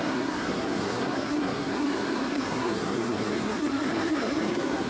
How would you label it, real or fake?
fake